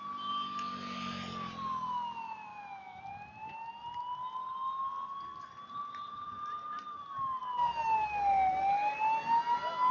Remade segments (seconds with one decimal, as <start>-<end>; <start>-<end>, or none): 2.5-3.0